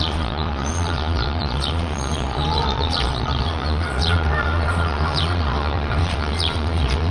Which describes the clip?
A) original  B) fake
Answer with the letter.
B